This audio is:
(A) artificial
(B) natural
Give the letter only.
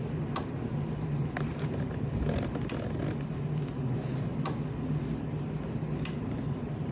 B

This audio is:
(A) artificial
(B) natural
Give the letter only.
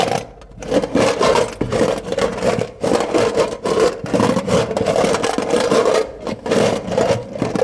B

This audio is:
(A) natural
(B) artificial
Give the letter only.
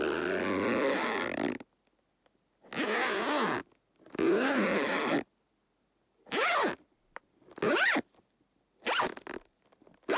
A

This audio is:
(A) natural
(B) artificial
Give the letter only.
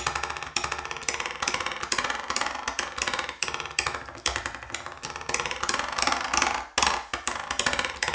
A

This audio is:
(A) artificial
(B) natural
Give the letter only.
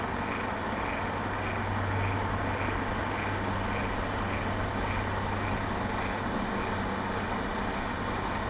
B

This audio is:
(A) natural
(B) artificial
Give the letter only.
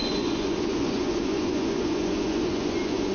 B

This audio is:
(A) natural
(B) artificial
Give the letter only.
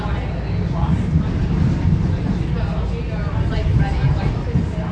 A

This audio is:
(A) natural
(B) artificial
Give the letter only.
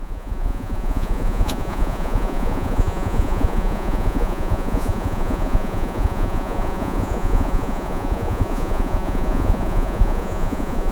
B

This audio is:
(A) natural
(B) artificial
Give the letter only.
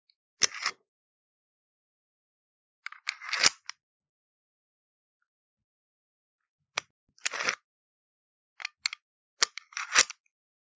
A